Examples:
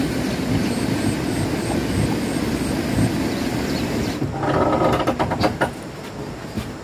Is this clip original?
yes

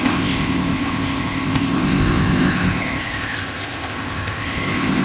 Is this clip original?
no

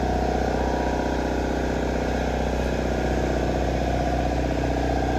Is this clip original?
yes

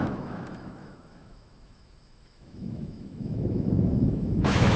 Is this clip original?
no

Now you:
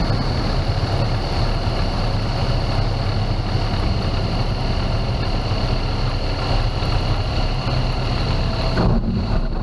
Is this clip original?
yes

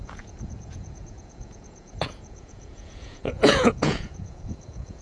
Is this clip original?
no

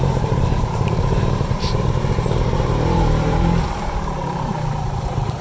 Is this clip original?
no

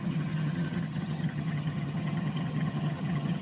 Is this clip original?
no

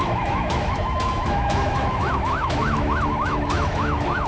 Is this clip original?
no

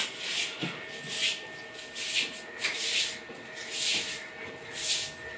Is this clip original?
yes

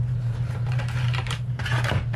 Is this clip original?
no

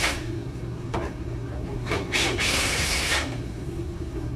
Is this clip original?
no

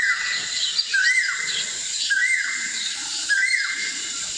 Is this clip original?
no